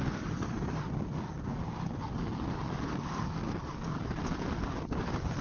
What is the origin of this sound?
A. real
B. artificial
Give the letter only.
A